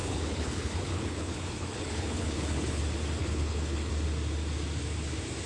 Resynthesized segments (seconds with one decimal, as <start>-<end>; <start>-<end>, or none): 0.0-2.8; 3.2-3.9